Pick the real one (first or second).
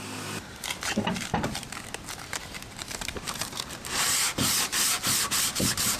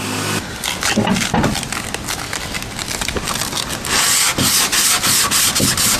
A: second